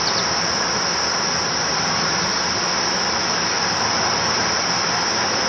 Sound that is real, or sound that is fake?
real